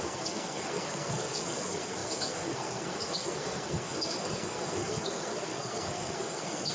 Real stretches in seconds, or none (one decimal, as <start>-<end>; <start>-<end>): none